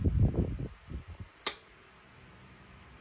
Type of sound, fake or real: real